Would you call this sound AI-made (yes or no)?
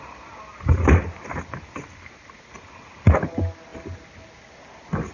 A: no